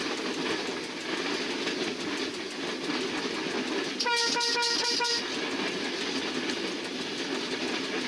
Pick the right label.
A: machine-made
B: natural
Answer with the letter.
B